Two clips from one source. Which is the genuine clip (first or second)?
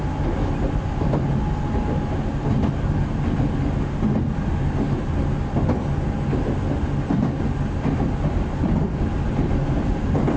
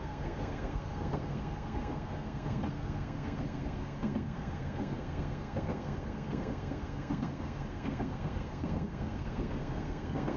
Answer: first